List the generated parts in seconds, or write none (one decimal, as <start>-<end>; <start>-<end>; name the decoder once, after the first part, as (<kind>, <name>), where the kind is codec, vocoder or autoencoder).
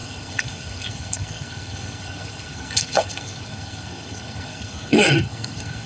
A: 0.0-5.9 (codec, SNAC)